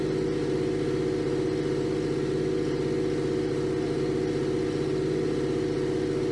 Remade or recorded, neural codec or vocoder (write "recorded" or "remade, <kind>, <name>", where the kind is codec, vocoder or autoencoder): recorded